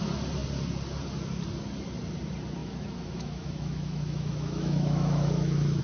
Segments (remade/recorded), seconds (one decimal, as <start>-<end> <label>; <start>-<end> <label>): 0.0-2.6 recorded; 2.6-5.8 remade